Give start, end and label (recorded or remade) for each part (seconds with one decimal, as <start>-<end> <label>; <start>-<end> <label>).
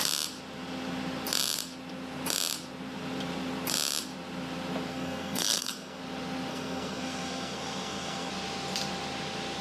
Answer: 0.0-4.9 recorded; 4.9-6.0 remade; 6.0-6.5 recorded; 6.5-8.3 remade; 8.3-9.6 recorded